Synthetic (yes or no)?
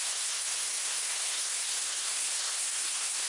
yes